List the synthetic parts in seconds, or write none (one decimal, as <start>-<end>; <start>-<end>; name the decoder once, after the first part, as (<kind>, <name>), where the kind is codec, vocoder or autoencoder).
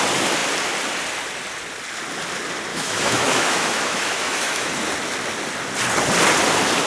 2.7-4.7 (autoencoder, DAC-VAE)